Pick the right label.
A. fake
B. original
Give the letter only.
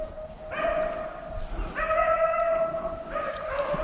B